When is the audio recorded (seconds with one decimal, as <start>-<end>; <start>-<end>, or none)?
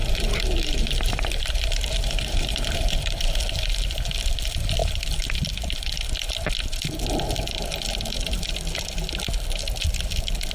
3.4-10.5